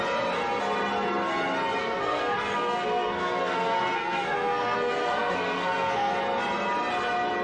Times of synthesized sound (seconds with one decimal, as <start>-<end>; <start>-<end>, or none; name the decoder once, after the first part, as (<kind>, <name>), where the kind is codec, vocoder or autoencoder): 1.8-6.2 (codec, SNAC)